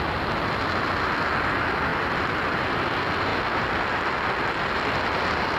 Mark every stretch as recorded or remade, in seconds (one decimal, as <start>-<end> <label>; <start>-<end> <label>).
0.0-5.6 recorded